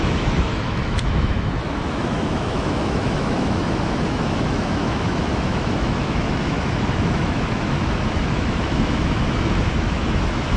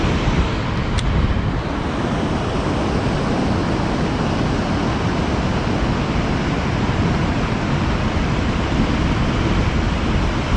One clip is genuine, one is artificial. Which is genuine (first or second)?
second